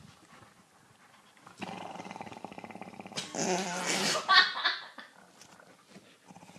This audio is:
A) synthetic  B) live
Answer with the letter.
B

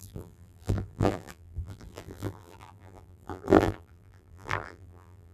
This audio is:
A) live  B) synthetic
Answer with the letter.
B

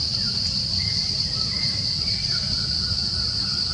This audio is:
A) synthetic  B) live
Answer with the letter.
B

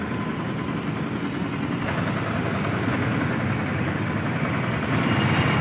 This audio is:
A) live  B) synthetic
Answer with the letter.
A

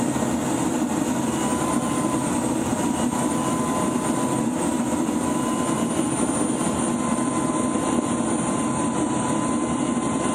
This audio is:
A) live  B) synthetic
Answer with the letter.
A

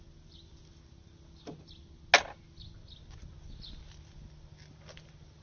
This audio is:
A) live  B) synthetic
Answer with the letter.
A